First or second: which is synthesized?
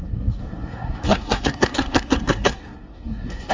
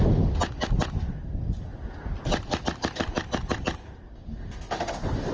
first